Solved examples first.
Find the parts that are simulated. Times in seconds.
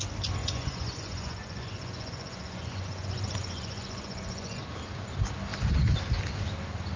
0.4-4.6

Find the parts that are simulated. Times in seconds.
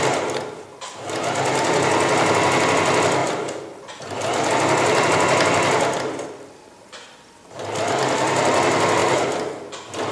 none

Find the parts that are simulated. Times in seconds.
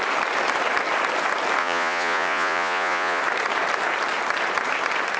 1.6-3.2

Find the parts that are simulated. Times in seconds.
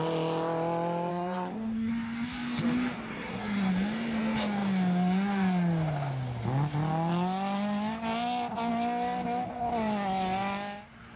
1.1-1.9; 3.1-3.7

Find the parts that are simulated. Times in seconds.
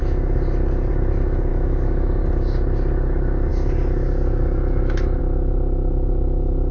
1.5-2.2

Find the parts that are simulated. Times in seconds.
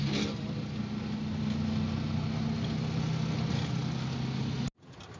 none